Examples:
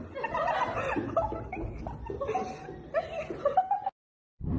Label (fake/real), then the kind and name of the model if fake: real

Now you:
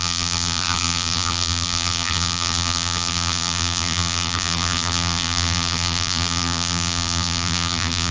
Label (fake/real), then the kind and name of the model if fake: fake, vocoder, BigVGAN v2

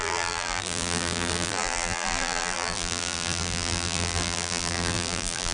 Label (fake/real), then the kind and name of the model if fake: fake, vocoder, BigVGAN v2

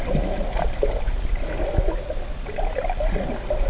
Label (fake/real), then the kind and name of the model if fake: real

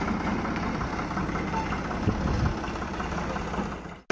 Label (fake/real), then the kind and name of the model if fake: real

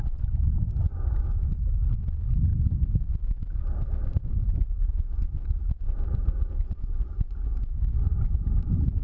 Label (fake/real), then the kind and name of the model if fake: real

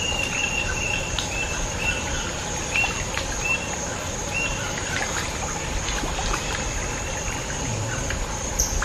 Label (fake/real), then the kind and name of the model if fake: fake, vocoder, BigVGAN v2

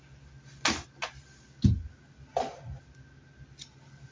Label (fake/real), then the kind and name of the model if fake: real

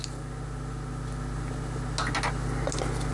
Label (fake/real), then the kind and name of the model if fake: real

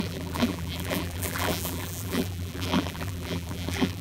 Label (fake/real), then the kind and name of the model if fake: fake, vocoder, BigVGAN v2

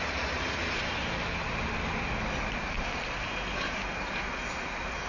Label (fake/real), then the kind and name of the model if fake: real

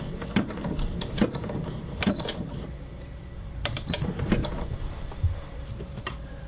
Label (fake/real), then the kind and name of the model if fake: fake, vocoder, BigVGAN v2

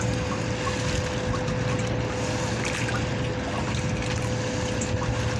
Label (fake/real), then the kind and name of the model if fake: real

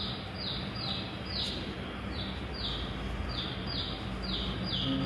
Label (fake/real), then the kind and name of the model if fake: real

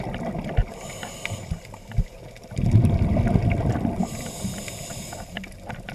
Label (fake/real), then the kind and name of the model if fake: real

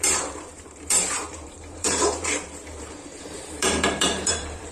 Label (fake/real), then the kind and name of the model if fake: fake, vocoder, BigVGAN v2